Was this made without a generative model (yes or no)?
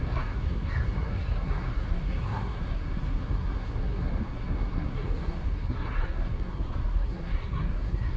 no